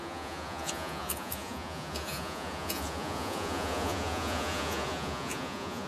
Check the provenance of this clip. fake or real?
fake